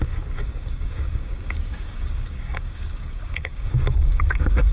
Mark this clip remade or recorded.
remade